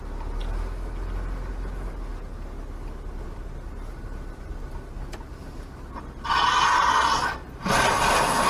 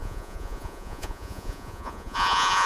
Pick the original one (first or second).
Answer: first